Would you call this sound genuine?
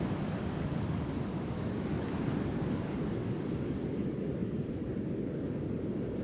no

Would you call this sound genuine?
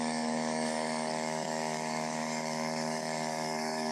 no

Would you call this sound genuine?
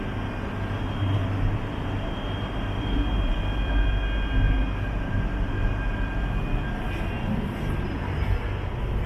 yes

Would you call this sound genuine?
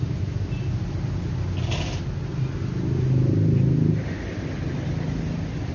yes